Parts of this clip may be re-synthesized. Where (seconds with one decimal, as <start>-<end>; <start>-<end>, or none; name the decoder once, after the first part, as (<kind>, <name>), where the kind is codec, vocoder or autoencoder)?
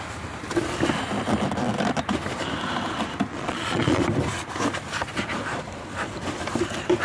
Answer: 3.3-4.0 (vocoder, Vocos)